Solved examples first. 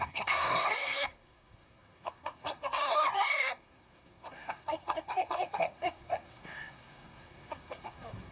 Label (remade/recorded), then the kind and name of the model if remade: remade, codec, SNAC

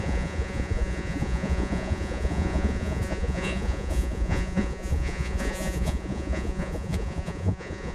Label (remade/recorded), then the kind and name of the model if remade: remade, vocoder, Vocos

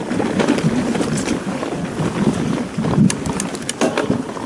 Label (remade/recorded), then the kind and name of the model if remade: recorded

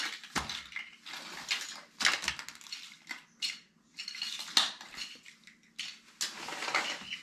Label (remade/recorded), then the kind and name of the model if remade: recorded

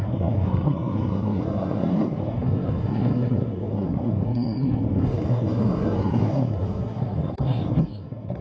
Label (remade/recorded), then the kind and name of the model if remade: remade, codec, SNAC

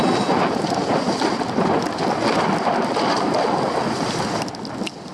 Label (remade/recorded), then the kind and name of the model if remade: recorded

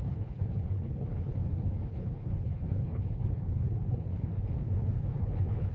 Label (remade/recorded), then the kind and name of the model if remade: remade, codec, HILCodec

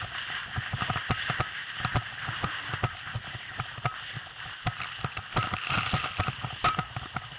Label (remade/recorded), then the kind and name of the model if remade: recorded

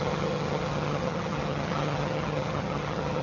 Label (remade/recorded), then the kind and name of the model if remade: remade, vocoder, HiFi-GAN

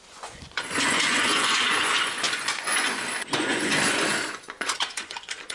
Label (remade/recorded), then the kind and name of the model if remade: remade, vocoder, Vocos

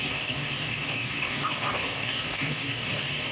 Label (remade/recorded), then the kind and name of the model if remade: remade, codec, DAC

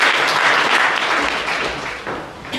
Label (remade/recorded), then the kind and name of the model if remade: recorded